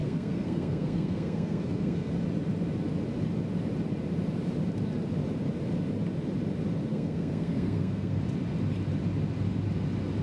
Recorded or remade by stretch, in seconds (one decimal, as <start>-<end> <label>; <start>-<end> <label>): 0.0-2.1 remade; 2.1-6.9 recorded; 6.9-8.2 remade; 8.2-10.2 recorded